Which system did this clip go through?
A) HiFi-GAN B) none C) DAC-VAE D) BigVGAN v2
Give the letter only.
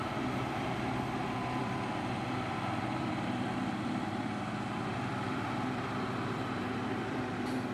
D